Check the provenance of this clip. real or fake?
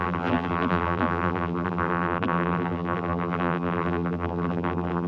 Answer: fake